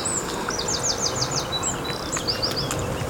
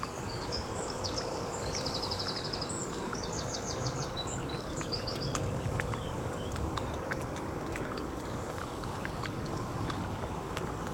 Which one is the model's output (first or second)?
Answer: second